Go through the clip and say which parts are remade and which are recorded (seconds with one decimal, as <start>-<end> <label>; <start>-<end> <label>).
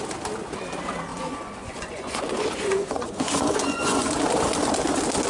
0.0-1.1 recorded; 1.1-4.1 remade; 4.1-5.3 recorded